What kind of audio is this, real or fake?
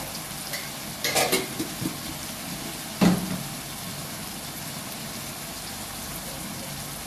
real